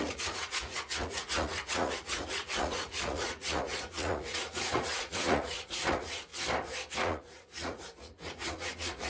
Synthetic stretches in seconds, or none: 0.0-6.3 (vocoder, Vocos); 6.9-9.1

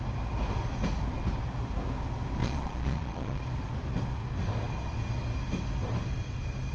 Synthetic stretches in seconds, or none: 2.4-3.4 (vocoder, Vocos)

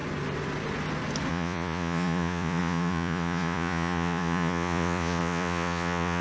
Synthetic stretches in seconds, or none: 1.3-6.2 (vocoder, Vocos)

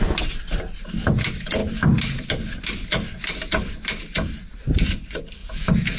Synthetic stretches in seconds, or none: 5.4-6.0 (vocoder, Vocos)

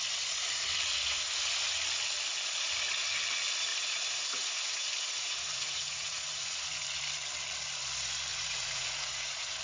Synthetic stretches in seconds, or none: 3.7-6.8 (vocoder, Vocos); 8.3-9.6

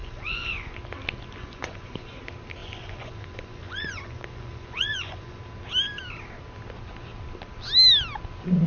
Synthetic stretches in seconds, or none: 0.0-0.7 (vocoder, Vocos); 1.4-2.2; 2.6-5.4

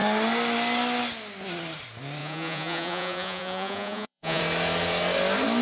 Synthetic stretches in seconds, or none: 2.2-4.4 (vocoder, Vocos)

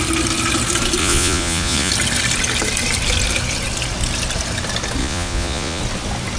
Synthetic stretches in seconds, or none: 1.0-1.9 (vocoder, Vocos); 5.0-5.8